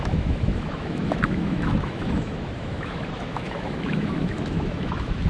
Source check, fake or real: fake